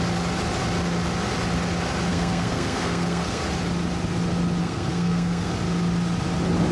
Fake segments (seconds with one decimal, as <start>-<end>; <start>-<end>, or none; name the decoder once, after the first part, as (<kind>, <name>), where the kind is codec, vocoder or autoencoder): 2.1-3.4 (codec, SNAC); 4.6-5.5